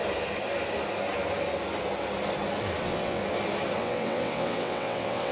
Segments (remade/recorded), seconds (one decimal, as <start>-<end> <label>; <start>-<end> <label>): 0.0-2.8 recorded; 2.8-3.2 remade; 3.2-3.8 recorded; 3.8-5.3 remade